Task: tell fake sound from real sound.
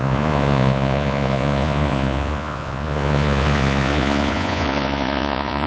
fake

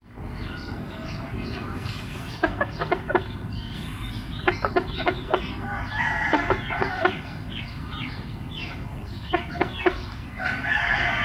fake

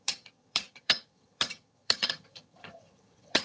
fake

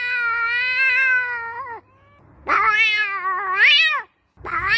real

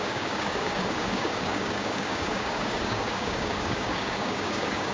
fake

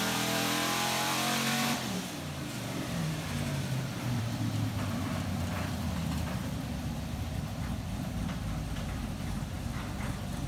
fake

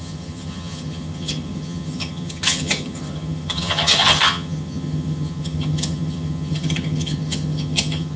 fake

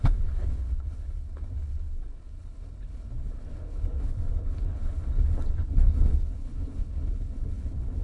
fake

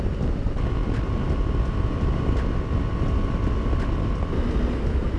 real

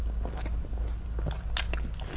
real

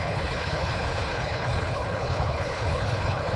fake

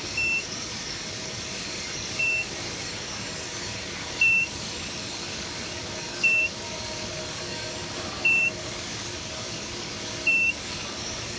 fake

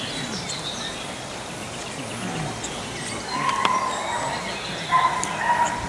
real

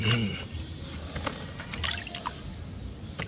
real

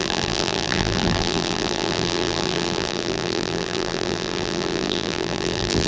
fake